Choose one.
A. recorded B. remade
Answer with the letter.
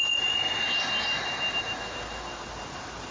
A